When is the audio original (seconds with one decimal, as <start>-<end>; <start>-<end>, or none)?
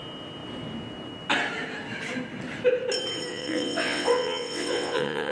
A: 0.0-3.3